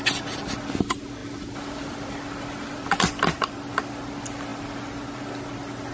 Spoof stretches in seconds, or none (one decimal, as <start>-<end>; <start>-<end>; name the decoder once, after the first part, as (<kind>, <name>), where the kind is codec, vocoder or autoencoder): none